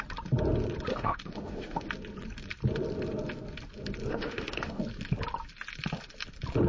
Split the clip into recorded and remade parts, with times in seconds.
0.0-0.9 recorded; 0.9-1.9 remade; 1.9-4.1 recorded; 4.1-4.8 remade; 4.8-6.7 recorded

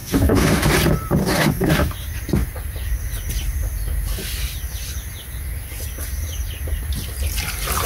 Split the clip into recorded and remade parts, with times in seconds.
0.0-0.7 remade; 0.7-1.2 recorded; 1.2-1.9 remade; 1.9-7.9 recorded

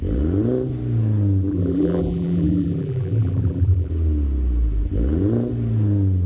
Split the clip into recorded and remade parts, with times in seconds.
0.0-1.5 recorded; 1.5-3.9 remade; 3.9-6.3 recorded

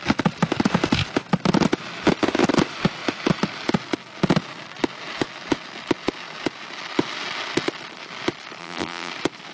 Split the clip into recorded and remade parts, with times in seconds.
0.0-8.6 recorded; 8.6-9.1 remade; 9.1-9.5 recorded

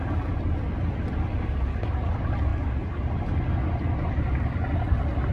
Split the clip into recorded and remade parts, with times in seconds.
0.0-5.3 recorded

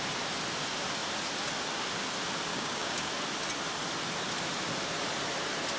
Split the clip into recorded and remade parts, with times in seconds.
0.0-2.5 recorded; 2.5-3.1 remade; 3.1-5.8 recorded